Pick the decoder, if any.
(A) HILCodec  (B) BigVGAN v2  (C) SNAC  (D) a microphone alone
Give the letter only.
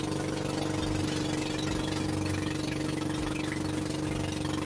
D